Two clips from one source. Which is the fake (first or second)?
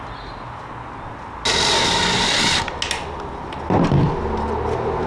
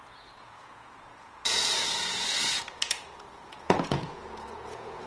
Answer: second